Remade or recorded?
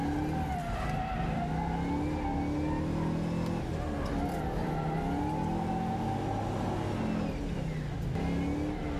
recorded